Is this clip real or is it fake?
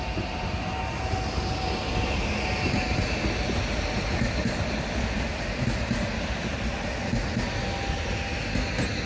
real